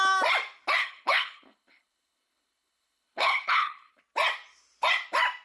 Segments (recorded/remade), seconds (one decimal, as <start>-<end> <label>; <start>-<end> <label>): 0.0-0.8 recorded; 0.8-4.0 remade; 4.0-5.4 recorded